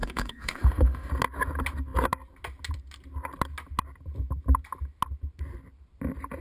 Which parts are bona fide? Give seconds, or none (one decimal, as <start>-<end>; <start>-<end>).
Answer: 1.1-6.4